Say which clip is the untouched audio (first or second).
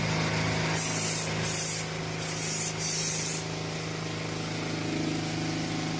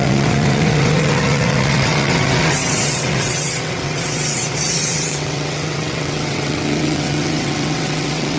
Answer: first